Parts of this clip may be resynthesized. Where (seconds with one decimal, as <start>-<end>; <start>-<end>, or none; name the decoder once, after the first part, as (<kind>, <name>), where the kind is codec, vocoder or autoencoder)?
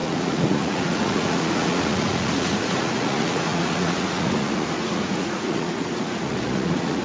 0.0-7.0 (vocoder, Vocos)